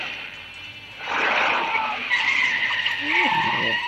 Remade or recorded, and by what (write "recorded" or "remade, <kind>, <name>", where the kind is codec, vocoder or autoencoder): recorded